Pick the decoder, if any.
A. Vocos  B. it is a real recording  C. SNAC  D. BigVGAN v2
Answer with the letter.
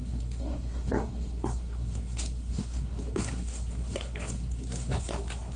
C